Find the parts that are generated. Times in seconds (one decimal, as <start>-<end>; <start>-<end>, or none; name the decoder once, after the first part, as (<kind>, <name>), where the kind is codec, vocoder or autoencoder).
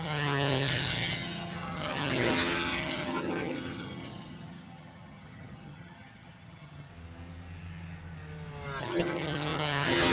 0.0-6.9 (vocoder, HiFi-GAN); 8.8-10.1